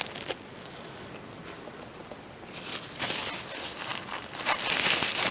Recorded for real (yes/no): yes